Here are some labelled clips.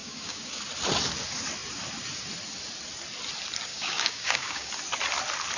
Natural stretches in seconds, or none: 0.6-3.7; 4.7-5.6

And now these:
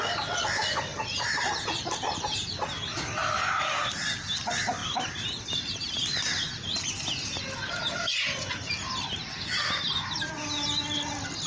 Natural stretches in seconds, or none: 0.0-3.4; 3.9-11.5